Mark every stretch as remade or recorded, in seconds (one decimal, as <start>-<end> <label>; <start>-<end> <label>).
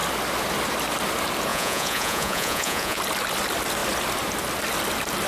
0.0-1.5 recorded; 1.5-3.0 remade; 3.0-5.3 recorded